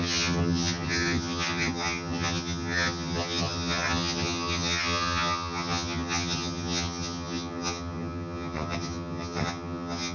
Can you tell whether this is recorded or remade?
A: remade